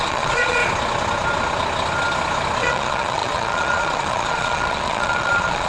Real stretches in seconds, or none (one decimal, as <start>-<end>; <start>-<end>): 0.6-2.6